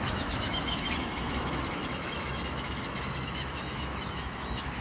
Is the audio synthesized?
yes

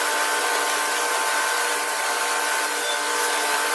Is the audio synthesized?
no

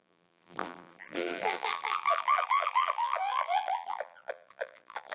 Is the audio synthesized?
yes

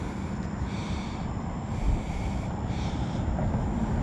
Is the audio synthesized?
yes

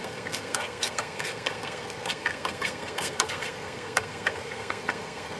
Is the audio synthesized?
yes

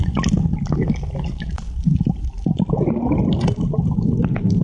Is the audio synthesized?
no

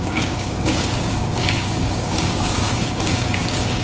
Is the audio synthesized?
yes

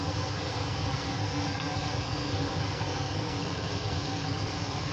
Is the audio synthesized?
yes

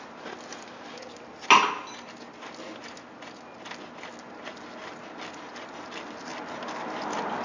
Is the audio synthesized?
no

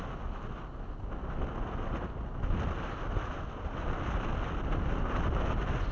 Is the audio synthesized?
no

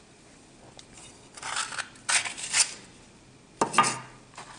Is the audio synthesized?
no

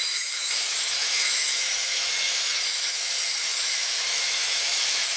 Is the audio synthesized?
yes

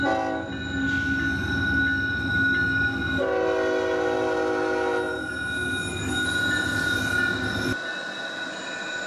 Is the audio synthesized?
no